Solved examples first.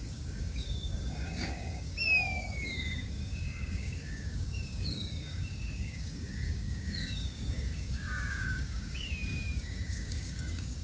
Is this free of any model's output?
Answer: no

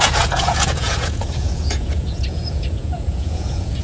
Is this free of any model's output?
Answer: no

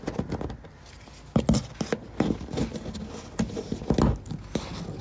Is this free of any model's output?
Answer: yes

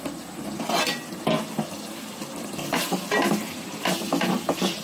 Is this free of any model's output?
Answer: yes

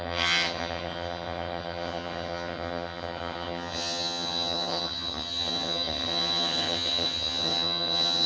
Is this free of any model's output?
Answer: no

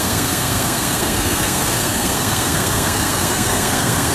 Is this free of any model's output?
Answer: no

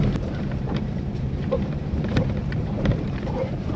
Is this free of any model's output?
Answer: no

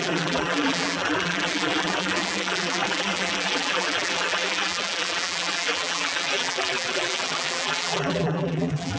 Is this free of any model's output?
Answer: no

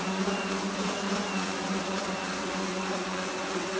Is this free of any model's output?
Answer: no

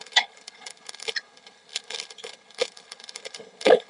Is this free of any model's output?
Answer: no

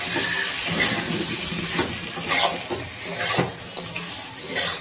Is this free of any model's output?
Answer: yes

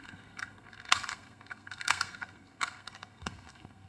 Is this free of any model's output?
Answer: no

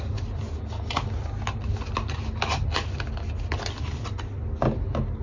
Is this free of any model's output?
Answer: yes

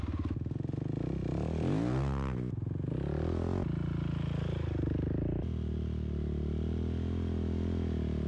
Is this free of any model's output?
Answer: yes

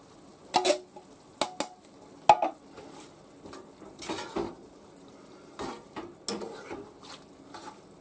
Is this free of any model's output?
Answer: yes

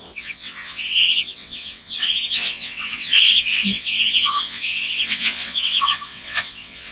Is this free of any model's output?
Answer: no